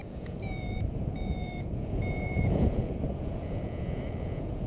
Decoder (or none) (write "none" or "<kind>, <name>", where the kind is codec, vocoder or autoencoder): vocoder, Vocos